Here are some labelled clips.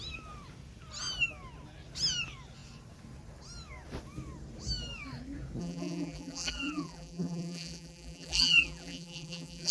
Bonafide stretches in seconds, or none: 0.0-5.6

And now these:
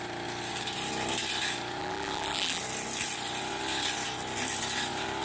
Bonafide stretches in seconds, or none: 0.0-1.8; 2.6-5.2

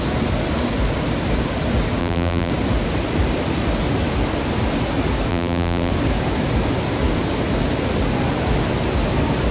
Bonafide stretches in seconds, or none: 0.0-2.0; 2.5-5.3; 5.9-9.5

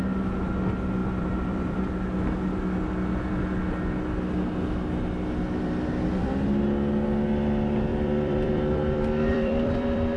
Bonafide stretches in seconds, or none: 0.0-1.0; 1.8-7.9

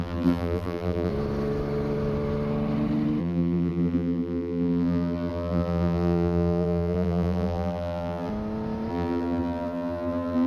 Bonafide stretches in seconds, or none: 1.1-3.2; 8.3-8.9

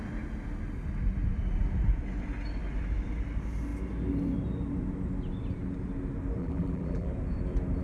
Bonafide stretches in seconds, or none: 0.0-6.4; 7.1-7.8

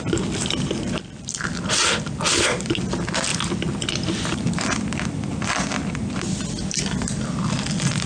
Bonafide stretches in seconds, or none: none